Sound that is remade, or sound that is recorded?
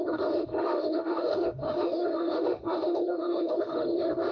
remade